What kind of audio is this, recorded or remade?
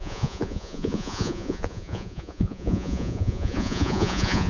remade